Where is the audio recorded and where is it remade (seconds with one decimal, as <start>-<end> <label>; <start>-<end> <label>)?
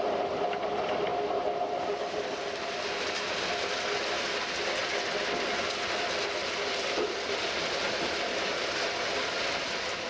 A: 0.0-10.1 recorded